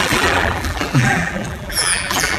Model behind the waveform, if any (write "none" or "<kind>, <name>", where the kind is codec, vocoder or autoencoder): vocoder, BigVGAN v2